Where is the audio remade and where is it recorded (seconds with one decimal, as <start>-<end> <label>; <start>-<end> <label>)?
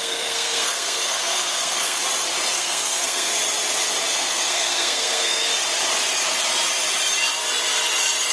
0.0-2.0 remade; 2.0-2.5 recorded; 2.5-3.3 remade; 3.3-4.1 recorded; 4.1-5.5 remade; 5.5-8.3 recorded